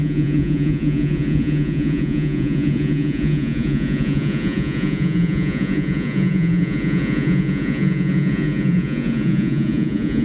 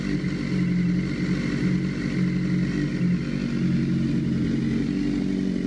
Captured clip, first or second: second